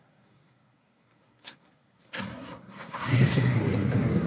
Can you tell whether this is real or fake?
fake